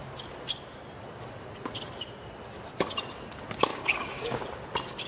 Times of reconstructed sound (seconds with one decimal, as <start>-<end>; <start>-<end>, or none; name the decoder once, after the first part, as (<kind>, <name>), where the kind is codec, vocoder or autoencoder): 3.7-4.4 (codec, DAC)